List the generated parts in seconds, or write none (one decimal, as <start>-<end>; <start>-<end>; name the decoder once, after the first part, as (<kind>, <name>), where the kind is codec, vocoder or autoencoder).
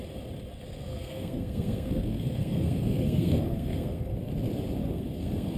0.9-4.3 (codec, SNAC); 4.8-5.6